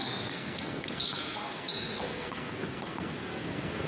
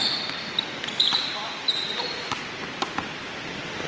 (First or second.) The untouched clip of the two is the second